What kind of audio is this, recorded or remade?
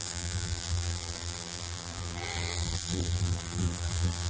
remade